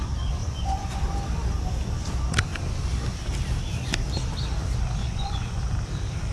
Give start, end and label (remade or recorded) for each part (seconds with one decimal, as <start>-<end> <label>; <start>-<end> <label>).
0.0-0.4 recorded; 0.4-1.0 remade; 1.0-5.0 recorded; 5.0-5.6 remade; 5.6-6.3 recorded